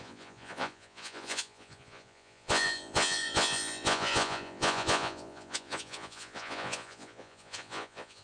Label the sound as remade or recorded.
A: remade